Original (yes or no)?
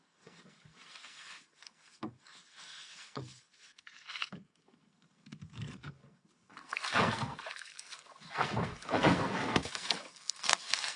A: no